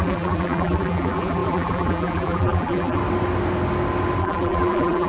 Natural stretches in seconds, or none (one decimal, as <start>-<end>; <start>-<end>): 3.0-4.2